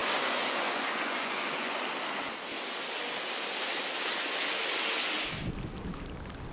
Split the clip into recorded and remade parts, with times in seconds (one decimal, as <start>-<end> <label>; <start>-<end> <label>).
0.0-1.8 remade; 1.8-6.5 recorded